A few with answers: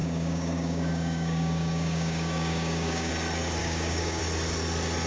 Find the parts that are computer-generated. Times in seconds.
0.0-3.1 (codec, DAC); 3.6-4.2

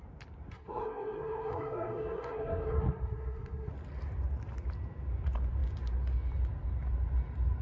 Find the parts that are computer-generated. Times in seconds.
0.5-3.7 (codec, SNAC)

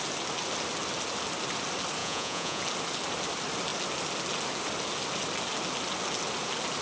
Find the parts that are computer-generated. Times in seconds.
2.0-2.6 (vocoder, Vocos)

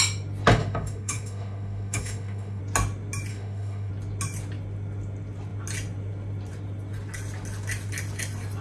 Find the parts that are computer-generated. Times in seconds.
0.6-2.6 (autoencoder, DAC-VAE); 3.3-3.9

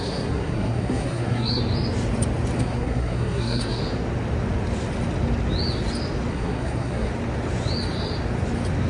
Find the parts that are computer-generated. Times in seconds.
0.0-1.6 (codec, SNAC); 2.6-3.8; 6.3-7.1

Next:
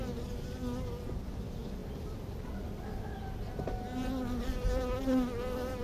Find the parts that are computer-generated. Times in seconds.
none

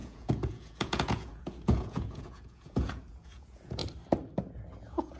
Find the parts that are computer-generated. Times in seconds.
0.0-3.8 (vocoder, Vocos); 4.8-5.2